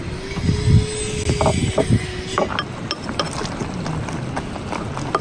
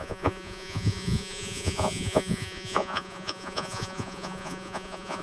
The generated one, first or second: second